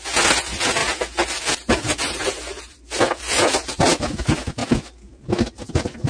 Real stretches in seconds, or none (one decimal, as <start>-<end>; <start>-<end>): 0.0-0.8; 4.1-6.1